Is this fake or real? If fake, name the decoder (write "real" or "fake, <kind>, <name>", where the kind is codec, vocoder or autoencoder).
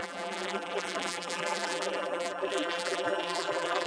fake, vocoder, BigVGAN v2